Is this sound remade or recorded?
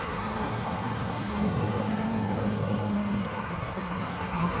remade